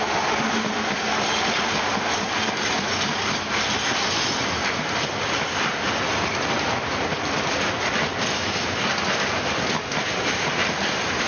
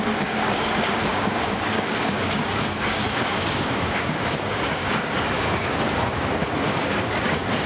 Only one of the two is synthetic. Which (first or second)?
second